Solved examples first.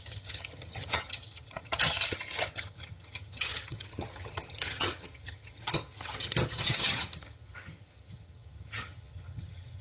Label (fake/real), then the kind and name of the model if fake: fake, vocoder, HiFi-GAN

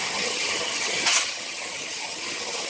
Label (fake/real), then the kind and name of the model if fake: fake, vocoder, HiFi-GAN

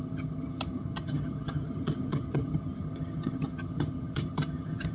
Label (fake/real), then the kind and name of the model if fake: fake, vocoder, HiFi-GAN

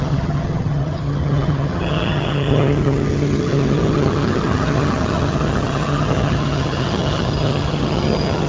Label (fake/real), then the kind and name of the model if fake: fake, vocoder, HiFi-GAN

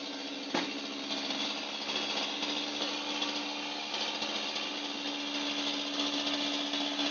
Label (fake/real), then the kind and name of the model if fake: real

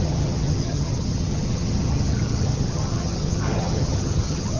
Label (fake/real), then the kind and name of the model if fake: fake, vocoder, HiFi-GAN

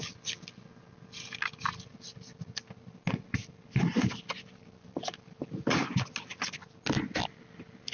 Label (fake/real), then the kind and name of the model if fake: real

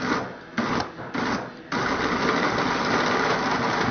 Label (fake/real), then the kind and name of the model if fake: real